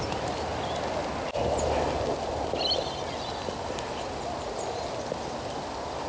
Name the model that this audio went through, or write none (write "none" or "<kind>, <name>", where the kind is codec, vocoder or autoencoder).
none